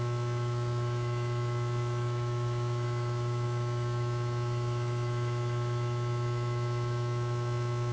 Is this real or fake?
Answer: fake